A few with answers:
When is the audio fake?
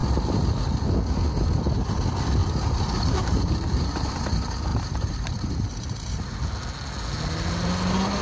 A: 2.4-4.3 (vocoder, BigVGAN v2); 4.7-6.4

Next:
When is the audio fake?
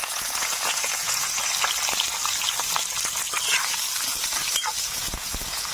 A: 0.0-1.4 (vocoder, Vocos); 4.8-5.7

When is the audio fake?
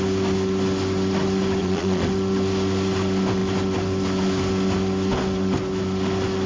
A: 1.6-2.1 (vocoder, Vocos)